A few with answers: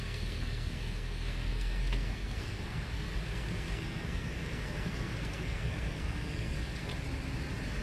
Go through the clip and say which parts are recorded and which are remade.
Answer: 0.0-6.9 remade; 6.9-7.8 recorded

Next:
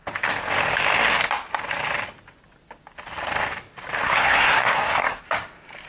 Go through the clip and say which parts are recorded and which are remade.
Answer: 0.0-4.0 recorded; 4.0-5.2 remade; 5.2-5.9 recorded

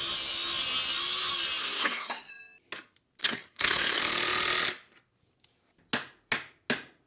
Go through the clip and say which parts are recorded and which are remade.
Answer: 0.0-1.6 recorded; 1.6-2.3 remade; 2.3-3.2 recorded; 3.2-4.0 remade; 4.0-7.1 recorded

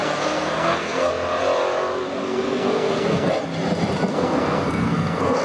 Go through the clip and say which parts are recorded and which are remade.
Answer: 0.0-1.1 remade; 1.1-2.2 recorded; 2.2-3.3 remade; 3.3-4.1 recorded; 4.1-5.4 remade